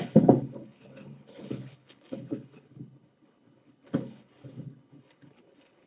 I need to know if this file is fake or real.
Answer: fake